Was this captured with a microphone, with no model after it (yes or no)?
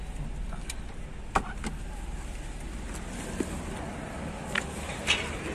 yes